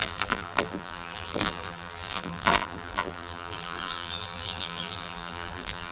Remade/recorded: remade